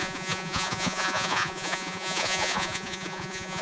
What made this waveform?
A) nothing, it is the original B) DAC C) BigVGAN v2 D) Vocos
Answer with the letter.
D